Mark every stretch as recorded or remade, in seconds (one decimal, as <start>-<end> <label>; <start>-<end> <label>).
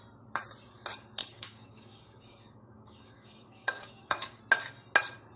0.0-1.2 recorded; 1.2-4.4 remade; 4.4-5.4 recorded